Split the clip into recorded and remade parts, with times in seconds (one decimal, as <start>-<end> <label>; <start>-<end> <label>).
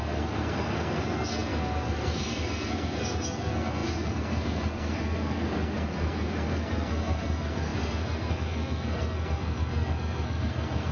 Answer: 0.0-10.9 remade